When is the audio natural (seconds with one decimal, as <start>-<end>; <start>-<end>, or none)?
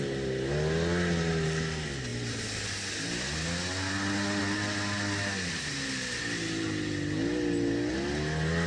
0.0-8.7